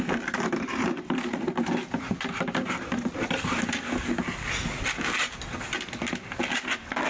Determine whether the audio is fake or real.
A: real